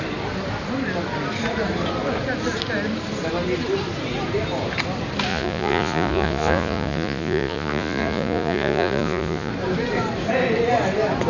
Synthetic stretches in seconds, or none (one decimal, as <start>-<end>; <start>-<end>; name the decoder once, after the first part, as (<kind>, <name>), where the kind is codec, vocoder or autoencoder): 5.3-9.5 (vocoder, Vocos)